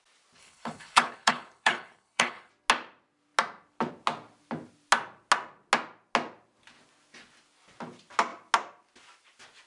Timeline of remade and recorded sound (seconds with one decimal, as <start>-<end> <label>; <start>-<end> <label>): 0.0-0.4 recorded; 0.4-2.5 remade; 2.5-9.7 recorded